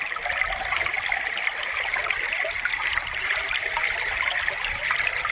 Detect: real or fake real